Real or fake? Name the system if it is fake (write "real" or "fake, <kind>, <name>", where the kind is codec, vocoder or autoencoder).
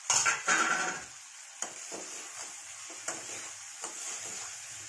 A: real